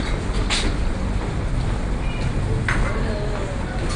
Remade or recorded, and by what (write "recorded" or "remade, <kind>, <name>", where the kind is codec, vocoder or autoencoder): recorded